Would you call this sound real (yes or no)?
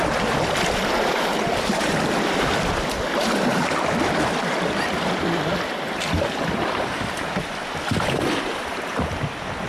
no